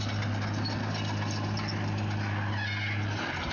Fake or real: real